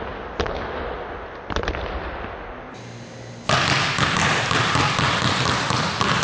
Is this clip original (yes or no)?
yes